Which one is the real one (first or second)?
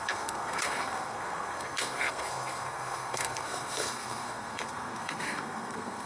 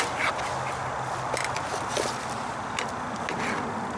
second